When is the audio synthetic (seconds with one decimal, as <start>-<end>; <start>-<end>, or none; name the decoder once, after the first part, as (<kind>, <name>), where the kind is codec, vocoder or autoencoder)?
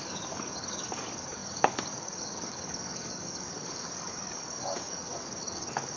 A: 0.0-6.0 (codec, DAC)